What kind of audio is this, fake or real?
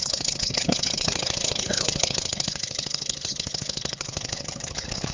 fake